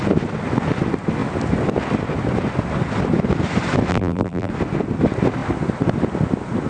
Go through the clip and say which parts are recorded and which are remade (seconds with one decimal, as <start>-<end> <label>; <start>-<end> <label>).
0.0-3.9 recorded; 3.9-4.5 remade; 4.5-6.7 recorded